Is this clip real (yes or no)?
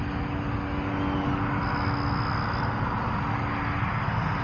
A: yes